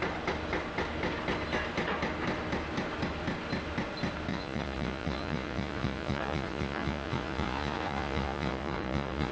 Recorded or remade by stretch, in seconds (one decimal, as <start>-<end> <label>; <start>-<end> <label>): 0.0-4.3 recorded; 4.3-9.3 remade